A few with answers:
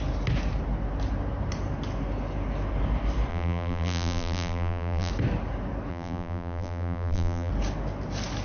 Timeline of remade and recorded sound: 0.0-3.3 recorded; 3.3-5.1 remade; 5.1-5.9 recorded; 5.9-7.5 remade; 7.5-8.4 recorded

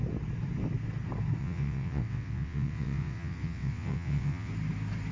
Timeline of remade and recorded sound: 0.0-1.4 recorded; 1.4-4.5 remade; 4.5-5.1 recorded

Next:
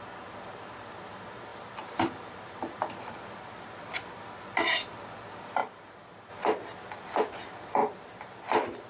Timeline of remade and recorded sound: 0.0-1.5 recorded; 1.5-2.9 remade; 2.9-5.6 recorded; 5.6-6.3 remade; 6.3-7.8 recorded; 7.8-8.9 remade

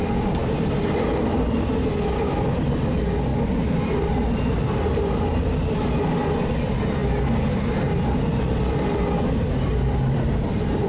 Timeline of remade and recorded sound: 0.0-10.9 recorded